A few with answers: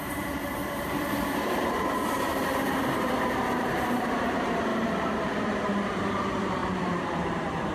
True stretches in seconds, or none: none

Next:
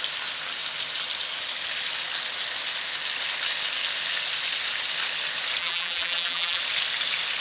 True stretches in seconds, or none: 0.0-5.6; 6.6-7.4

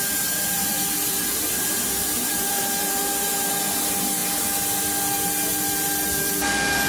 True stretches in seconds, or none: 4.2-5.6

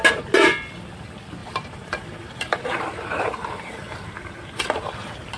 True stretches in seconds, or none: 0.0-1.4; 4.6-5.4

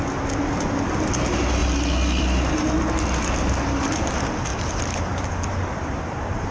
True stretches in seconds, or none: 0.0-4.5

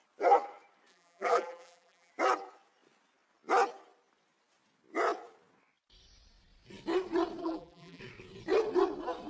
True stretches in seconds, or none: 0.0-0.9; 2.1-7.4; 8.0-9.3

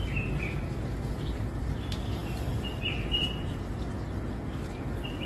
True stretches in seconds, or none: none

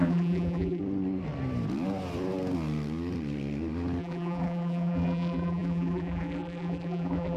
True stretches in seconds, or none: 0.8-4.0